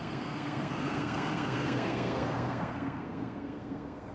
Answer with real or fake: fake